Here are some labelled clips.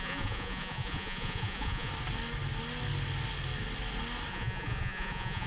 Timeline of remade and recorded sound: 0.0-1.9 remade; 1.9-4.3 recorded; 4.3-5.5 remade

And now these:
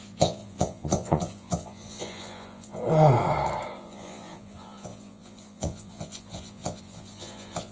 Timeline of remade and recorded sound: 0.0-2.8 remade; 2.8-3.8 recorded; 3.8-7.7 remade

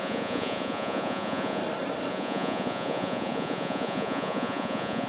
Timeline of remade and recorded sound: 0.0-1.6 remade; 1.6-2.1 recorded; 2.1-5.1 remade

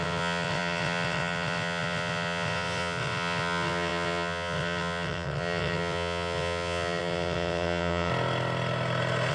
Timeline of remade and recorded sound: 0.0-8.1 remade; 8.1-9.3 recorded

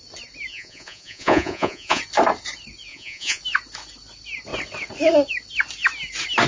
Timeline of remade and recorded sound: 0.0-0.5 recorded; 0.5-2.0 remade; 2.0-2.9 recorded; 2.9-3.4 remade; 3.4-6.5 recorded

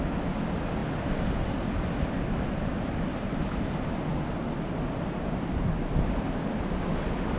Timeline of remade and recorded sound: 0.0-7.4 recorded